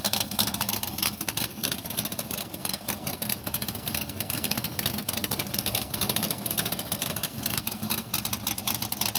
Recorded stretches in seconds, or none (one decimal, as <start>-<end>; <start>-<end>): 8.1-9.2